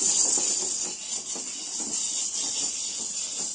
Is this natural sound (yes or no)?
yes